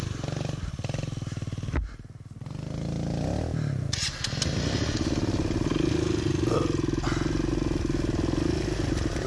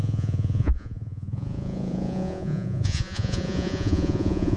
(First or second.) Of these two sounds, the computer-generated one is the second